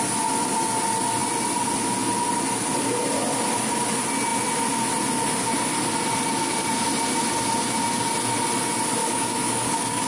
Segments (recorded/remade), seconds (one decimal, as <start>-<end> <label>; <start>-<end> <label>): 0.0-9.0 recorded; 9.0-10.1 remade